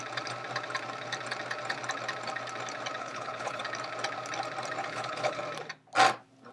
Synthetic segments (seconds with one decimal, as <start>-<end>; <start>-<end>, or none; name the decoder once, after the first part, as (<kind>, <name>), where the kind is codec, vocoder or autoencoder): 3.0-3.6 (codec, HILCodec); 4.8-5.4